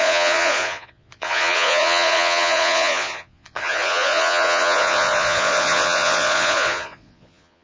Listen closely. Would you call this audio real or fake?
fake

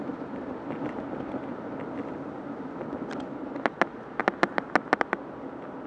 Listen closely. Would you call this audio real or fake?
real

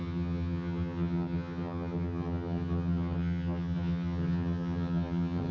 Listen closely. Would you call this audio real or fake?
fake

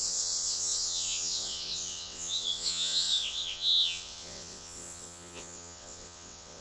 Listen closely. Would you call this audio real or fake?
fake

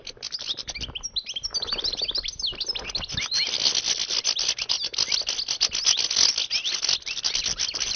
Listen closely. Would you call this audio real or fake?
real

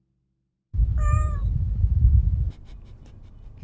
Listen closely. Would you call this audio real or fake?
real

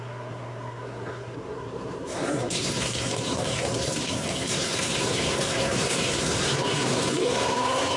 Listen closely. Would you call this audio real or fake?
fake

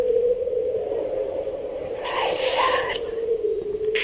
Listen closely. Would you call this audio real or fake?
fake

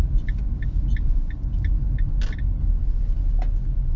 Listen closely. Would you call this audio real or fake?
real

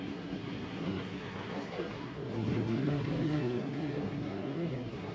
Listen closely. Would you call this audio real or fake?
fake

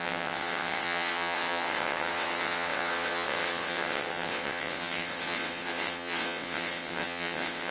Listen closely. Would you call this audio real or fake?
fake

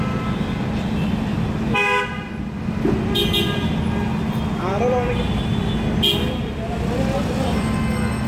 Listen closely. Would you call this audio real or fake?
real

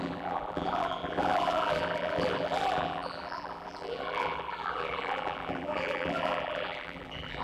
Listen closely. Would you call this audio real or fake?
fake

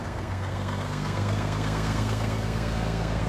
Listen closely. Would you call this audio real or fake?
fake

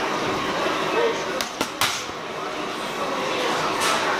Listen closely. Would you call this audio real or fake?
real